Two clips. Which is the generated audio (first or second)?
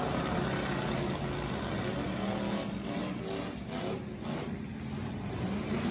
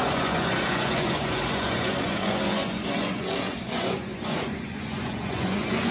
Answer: second